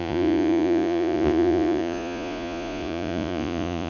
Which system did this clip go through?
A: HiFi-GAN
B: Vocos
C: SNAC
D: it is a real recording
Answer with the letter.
B